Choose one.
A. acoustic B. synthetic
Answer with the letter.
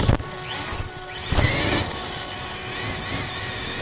A